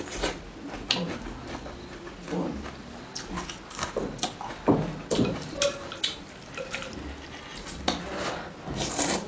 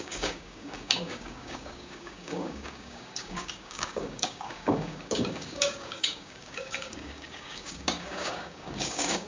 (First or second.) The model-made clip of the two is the second